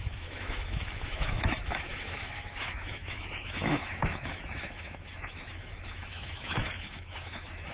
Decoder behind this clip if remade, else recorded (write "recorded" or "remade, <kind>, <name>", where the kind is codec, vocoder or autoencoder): remade, autoencoder, DAC-VAE